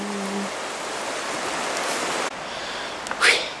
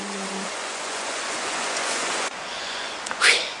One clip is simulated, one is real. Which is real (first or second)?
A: first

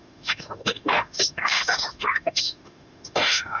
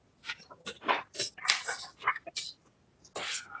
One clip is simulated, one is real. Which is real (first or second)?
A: second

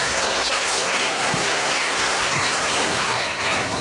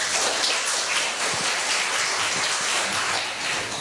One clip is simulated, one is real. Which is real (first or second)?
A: second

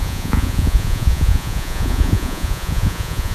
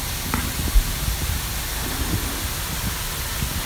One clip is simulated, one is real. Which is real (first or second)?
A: second